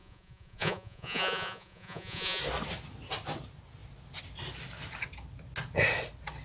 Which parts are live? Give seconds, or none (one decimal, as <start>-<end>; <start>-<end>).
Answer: 2.4-6.4